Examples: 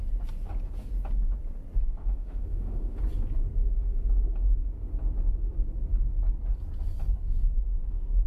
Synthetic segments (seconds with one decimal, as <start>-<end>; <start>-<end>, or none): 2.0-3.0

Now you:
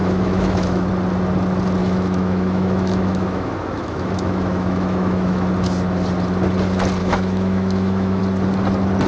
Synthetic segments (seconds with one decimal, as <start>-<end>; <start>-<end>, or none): 0.0-0.9; 1.8-5.5; 7.0-8.2

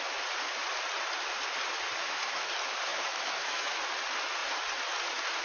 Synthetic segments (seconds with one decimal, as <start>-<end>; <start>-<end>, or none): 2.0-2.5; 2.9-3.8

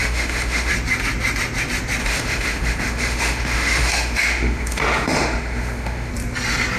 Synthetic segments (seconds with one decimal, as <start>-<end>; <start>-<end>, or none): 0.0-0.7; 2.0-6.1